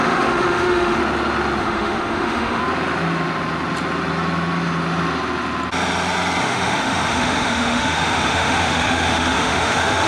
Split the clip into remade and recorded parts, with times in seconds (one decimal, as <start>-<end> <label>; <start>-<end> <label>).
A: 0.0-1.0 remade; 1.0-1.6 recorded; 1.6-2.6 remade; 2.6-6.4 recorded; 6.4-10.1 remade